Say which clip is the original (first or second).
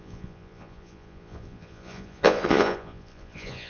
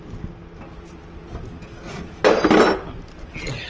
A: second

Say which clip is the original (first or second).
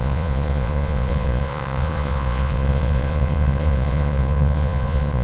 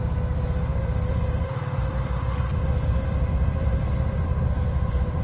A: second